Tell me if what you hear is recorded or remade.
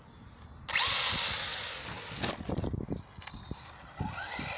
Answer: recorded